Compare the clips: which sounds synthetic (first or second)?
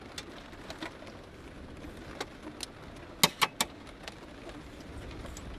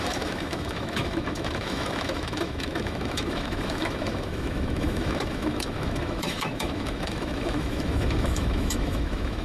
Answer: second